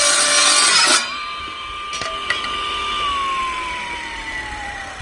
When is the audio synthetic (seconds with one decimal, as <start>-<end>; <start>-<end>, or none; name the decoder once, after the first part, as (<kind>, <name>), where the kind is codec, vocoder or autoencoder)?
0.0-0.4 (vocoder, BigVGAN v2); 3.4-5.0